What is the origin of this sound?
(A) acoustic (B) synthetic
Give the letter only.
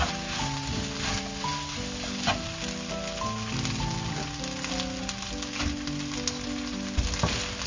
A